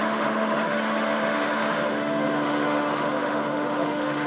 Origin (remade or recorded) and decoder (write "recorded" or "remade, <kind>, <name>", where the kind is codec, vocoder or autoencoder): remade, autoencoder, DAC-VAE